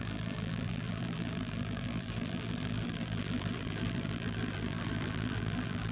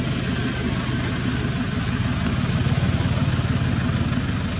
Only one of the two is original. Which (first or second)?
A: second